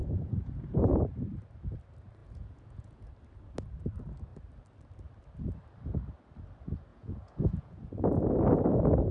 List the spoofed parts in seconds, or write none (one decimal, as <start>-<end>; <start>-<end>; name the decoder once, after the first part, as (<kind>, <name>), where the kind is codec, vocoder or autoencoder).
0.0-0.9 (vocoder, Vocos); 2.2-3.1; 6.9-7.9